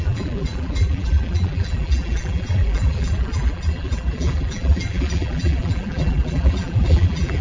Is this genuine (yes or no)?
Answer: no